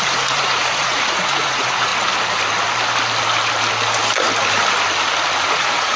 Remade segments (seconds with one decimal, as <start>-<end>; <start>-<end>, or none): 0.0-1.9; 5.5-6.0